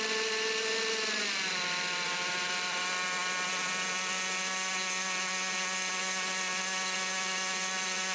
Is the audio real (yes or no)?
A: yes